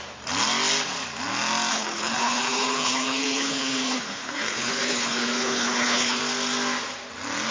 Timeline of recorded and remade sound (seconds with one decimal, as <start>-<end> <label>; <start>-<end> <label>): 0.0-1.7 recorded; 1.7-6.2 remade; 6.2-7.5 recorded